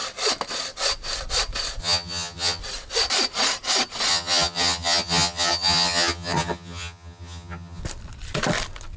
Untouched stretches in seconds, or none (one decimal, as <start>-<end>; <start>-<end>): 0.0-1.8; 2.6-4.1; 7.8-9.0